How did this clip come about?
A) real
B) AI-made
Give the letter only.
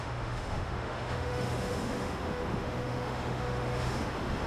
B